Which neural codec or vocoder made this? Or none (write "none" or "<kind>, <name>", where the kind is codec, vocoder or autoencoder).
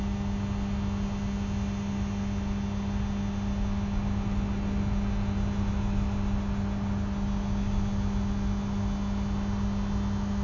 none